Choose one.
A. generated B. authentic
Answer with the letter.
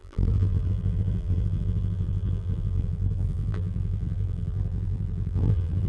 A